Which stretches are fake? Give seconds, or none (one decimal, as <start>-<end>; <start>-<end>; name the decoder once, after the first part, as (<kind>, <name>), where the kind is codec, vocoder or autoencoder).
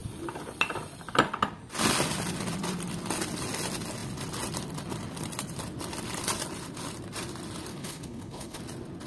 7.7-8.6 (codec, HILCodec)